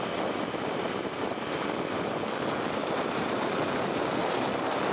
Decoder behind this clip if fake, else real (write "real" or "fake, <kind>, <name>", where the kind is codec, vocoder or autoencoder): real